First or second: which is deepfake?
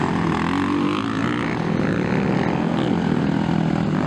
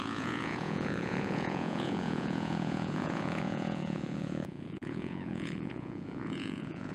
second